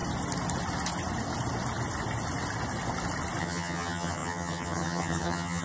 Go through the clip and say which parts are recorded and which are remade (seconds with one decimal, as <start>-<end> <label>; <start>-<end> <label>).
0.0-3.4 recorded; 3.4-5.6 remade

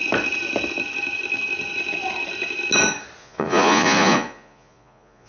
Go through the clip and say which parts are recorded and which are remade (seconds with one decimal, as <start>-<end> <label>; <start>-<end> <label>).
0.0-3.2 recorded; 3.2-5.3 remade